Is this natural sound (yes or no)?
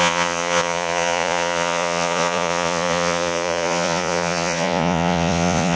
no